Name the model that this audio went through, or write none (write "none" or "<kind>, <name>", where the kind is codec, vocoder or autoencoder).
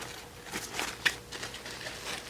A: none